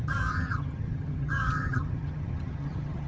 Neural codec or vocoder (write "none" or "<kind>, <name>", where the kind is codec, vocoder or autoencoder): vocoder, HiFi-GAN